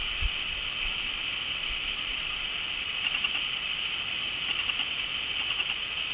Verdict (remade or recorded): recorded